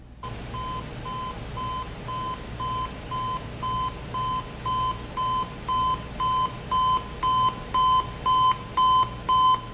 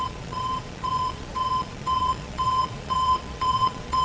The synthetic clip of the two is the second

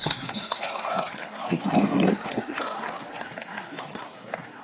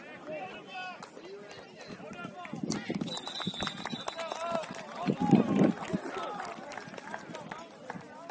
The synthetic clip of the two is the first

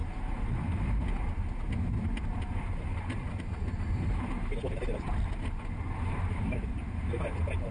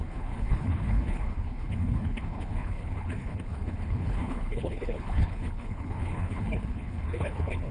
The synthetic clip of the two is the second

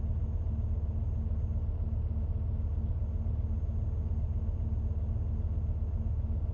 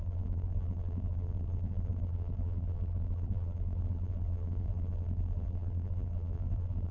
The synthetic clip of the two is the second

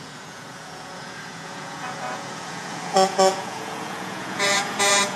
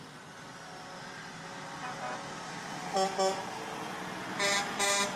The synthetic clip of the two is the first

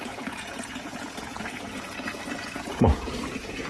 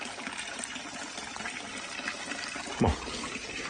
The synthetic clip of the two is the first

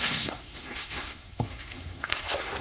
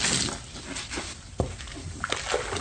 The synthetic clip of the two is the first